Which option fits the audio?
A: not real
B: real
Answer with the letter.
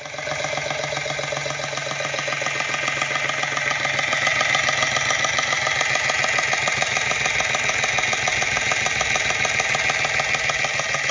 B